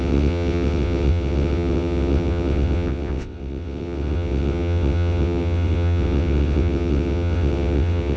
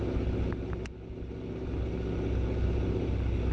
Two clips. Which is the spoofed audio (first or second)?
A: first